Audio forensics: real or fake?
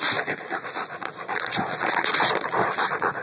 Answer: fake